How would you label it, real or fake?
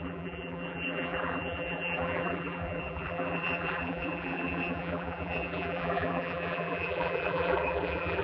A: fake